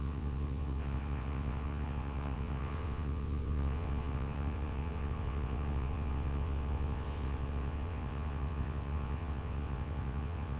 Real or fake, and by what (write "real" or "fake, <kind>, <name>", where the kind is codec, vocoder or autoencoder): fake, vocoder, WaveNeXt